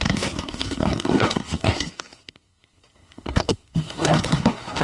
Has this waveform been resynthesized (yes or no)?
yes